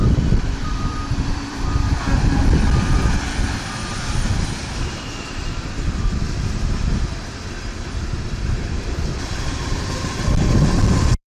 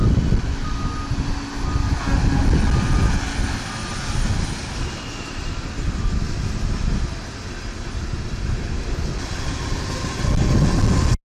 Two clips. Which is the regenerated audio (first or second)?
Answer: first